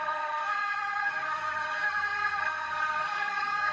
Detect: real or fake fake